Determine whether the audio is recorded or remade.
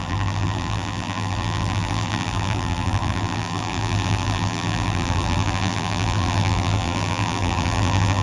remade